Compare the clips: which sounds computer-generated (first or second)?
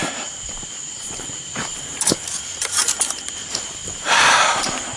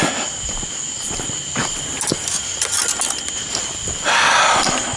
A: first